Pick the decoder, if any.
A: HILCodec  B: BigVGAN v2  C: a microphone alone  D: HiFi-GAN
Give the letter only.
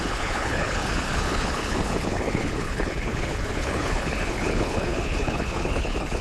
A